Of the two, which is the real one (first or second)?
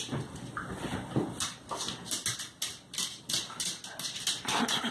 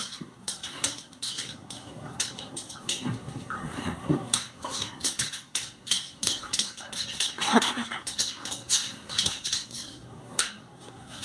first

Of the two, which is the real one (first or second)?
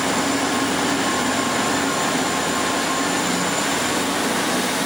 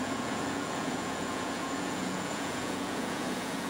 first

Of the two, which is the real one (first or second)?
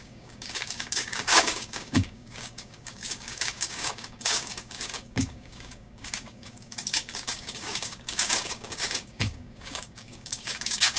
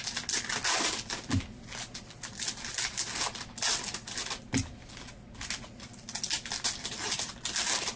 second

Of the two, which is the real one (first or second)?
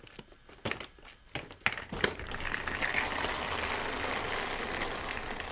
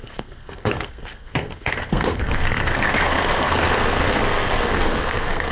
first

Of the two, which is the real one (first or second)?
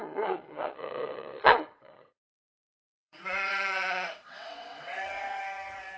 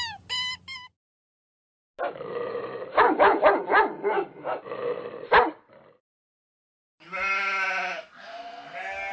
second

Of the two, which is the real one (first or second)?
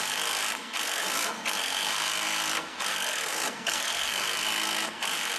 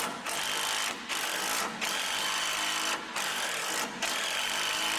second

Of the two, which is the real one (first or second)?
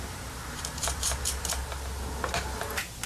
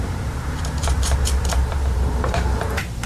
first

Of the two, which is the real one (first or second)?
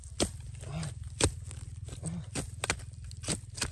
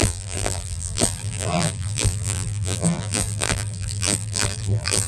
first